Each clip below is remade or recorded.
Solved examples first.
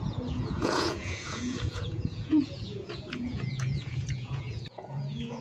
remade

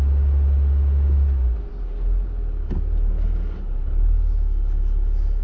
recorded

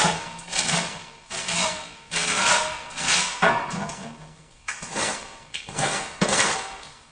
remade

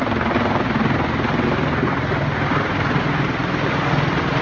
recorded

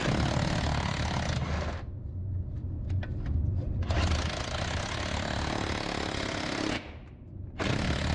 recorded